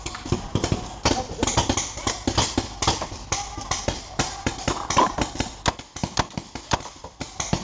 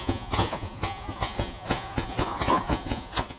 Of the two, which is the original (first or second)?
first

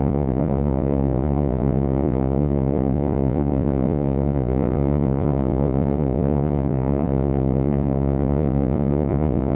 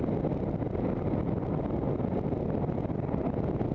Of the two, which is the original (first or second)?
second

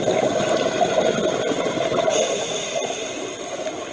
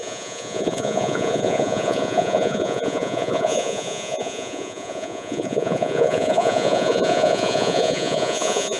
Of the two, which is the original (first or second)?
first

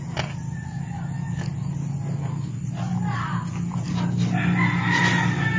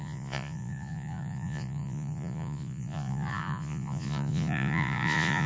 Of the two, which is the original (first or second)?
first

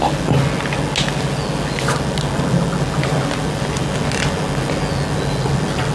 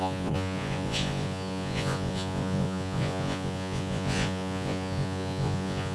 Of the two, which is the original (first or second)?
first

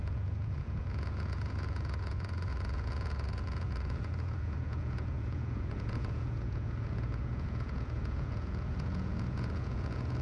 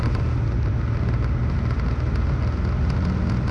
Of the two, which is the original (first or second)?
second